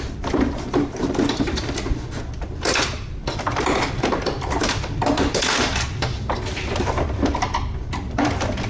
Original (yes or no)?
no